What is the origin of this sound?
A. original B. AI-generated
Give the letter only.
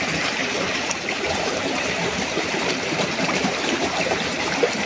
B